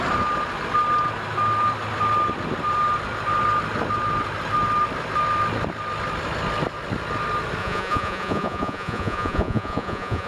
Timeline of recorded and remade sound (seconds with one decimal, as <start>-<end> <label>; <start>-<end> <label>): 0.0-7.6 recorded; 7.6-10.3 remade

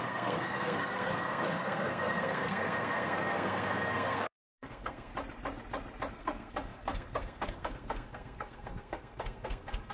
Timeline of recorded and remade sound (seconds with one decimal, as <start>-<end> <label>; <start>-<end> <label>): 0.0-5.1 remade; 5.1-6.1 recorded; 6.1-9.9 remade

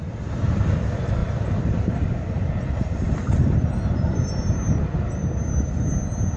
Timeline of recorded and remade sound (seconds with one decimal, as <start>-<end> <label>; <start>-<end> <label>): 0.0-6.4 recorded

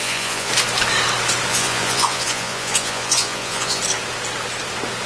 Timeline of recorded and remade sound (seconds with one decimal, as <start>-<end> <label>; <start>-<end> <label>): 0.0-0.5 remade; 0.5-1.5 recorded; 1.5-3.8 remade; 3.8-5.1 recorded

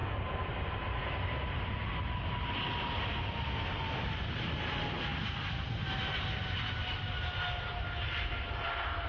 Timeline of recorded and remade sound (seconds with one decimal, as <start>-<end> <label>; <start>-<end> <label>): 0.0-9.1 recorded

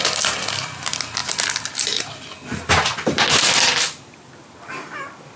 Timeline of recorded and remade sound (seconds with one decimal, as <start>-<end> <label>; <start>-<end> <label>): 0.0-5.4 recorded

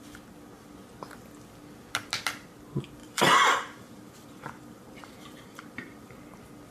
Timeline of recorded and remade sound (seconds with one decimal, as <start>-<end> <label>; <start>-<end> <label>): 0.0-3.0 recorded; 3.0-6.2 remade; 6.2-6.7 recorded